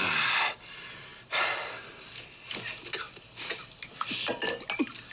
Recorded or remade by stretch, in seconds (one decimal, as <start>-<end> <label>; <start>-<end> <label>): 0.0-5.1 recorded

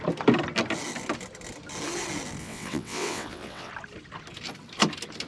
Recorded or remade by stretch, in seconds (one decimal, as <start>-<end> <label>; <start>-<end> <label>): 0.0-2.4 recorded; 2.4-3.7 remade; 3.7-5.3 recorded